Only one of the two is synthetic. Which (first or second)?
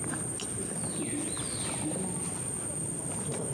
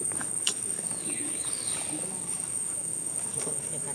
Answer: second